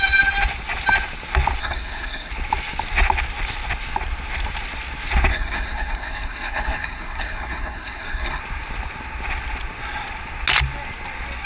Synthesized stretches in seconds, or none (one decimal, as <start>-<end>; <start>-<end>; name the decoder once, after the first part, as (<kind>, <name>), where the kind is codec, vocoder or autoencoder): 1.6-2.3 (codec, SNAC); 5.3-8.4